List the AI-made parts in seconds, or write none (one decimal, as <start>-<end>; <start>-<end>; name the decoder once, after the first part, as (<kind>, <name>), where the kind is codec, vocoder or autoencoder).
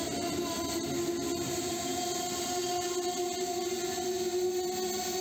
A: none